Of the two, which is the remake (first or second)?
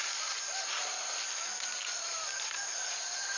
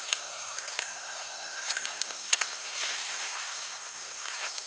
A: second